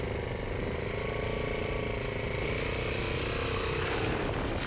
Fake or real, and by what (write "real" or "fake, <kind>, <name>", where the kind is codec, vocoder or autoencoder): real